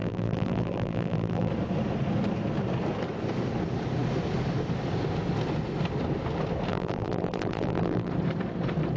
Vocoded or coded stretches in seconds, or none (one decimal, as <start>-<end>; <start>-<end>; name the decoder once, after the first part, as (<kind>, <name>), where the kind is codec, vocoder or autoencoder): 0.0-1.5 (vocoder, BigVGAN v2); 6.7-8.1

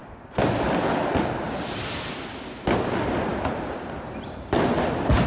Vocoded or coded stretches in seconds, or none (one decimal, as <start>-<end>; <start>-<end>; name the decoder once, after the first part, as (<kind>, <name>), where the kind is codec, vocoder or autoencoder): none

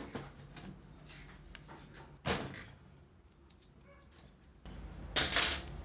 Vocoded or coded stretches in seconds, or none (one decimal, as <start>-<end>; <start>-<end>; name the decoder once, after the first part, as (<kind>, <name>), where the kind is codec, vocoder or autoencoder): none

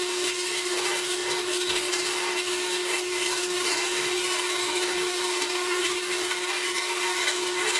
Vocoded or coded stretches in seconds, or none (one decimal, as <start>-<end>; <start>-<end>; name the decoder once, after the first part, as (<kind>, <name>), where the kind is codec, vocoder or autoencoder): 0.0-7.8 (codec, DAC)

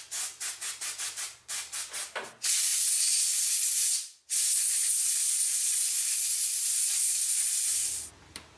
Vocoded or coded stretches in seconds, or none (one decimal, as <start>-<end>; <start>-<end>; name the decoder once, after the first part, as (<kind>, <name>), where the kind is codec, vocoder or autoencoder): none